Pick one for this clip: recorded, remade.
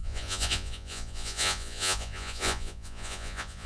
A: remade